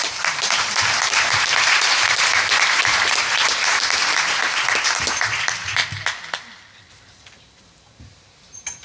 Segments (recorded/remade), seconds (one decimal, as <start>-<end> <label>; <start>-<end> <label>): 0.0-5.8 remade; 5.8-6.9 recorded; 6.9-8.8 remade